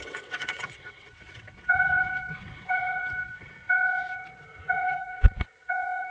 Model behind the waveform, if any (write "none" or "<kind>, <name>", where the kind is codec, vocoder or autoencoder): vocoder, WaveNeXt